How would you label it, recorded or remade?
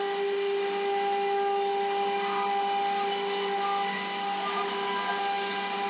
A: recorded